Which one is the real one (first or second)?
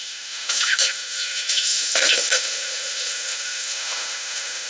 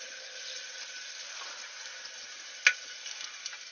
second